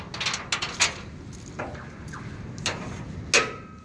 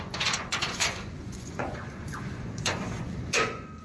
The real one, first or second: first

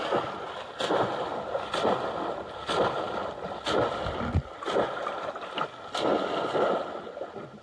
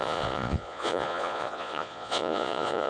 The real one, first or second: first